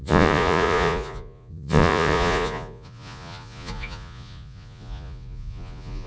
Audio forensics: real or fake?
fake